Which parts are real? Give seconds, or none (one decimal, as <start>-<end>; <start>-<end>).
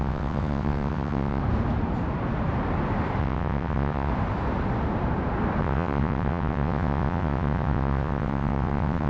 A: 1.4-3.2; 4.1-5.6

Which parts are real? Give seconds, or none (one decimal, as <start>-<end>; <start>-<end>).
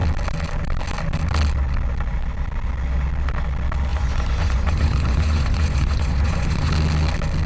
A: 0.0-3.9; 6.7-7.5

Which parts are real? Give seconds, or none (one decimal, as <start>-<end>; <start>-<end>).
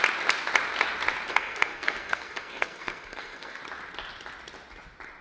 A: 0.0-1.3; 3.6-5.2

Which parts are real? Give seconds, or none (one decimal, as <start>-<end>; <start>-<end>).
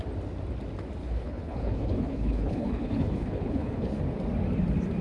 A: 0.0-1.0; 4.0-5.0